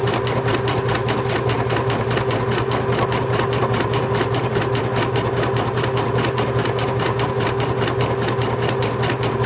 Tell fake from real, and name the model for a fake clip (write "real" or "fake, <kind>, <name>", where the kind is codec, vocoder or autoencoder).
real